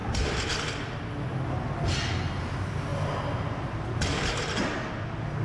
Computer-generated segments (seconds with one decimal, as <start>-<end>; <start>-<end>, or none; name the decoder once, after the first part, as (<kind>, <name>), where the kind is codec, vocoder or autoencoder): 0.0-0.9 (vocoder, BigVGAN v2)